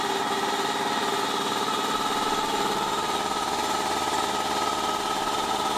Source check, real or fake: real